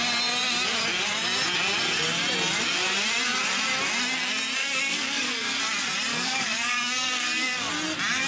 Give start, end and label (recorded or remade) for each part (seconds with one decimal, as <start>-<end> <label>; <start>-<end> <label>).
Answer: 0.0-4.6 recorded; 4.6-5.6 remade; 5.6-6.1 recorded; 6.1-7.7 remade; 7.7-8.3 recorded